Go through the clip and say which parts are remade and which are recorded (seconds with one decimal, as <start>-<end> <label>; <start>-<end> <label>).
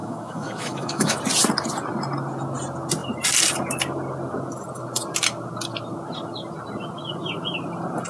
0.0-1.2 remade; 1.2-8.1 recorded